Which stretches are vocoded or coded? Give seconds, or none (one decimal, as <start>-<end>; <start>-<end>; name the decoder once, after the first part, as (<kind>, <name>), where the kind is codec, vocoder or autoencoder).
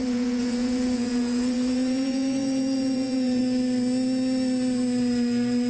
0.0-3.4 (vocoder, Vocos)